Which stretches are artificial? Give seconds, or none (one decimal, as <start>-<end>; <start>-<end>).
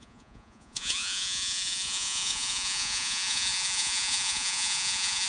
0.0-5.3